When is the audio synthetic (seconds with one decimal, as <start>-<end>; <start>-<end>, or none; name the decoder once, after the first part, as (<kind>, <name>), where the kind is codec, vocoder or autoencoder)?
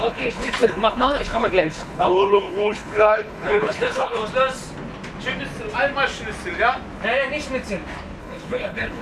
0.0-4.2 (codec, HILCodec); 8.2-9.0